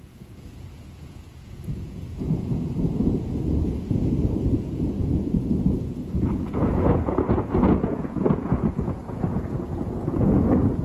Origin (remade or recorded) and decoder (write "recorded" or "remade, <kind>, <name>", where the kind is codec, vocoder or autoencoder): remade, vocoder, Vocos